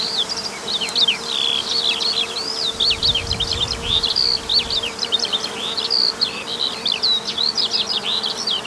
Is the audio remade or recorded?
remade